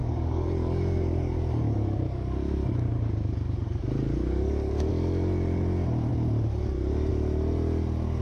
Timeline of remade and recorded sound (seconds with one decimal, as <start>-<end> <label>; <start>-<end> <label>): 0.0-4.9 remade; 4.9-8.2 recorded